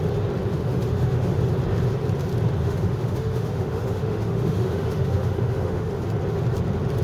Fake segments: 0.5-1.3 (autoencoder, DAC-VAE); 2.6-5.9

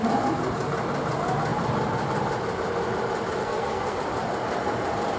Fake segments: 3.4-4.0 (codec, SNAC)

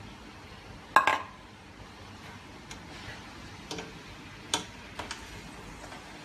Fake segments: 1.1-1.8 (vocoder, BigVGAN v2); 3.1-3.6

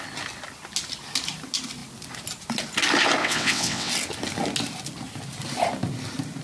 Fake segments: 3.2-3.9 (vocoder, WaveNeXt)